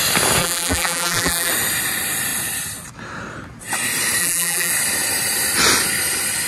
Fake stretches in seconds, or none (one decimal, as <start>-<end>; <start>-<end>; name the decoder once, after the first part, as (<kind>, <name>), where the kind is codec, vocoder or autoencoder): 0.4-1.5 (vocoder, BigVGAN v2); 4.2-4.7